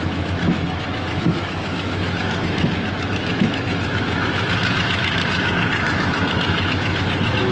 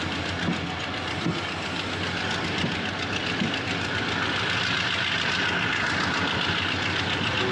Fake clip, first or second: first